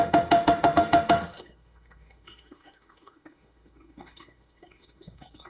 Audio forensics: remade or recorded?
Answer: remade